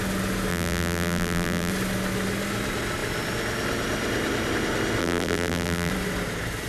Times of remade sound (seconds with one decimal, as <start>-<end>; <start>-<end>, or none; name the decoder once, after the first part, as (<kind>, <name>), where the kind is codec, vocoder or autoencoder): 0.5-1.7 (vocoder, BigVGAN v2); 5.0-5.9